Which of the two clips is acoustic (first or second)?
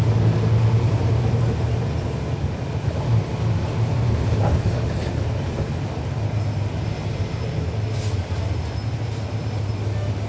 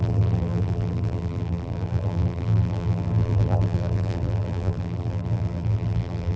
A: first